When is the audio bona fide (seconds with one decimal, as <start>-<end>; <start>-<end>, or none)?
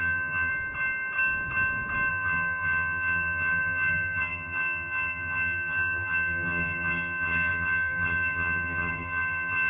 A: 0.5-2.1